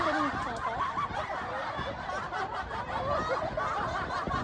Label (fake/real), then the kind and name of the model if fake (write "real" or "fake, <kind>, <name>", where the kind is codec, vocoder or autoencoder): real